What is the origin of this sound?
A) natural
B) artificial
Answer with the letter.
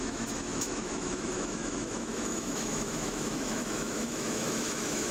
B